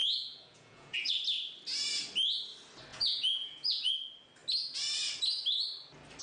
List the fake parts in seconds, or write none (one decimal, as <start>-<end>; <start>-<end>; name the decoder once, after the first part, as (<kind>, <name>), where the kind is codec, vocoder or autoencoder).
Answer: 0.0-1.1 (vocoder, Vocos); 2.9-3.9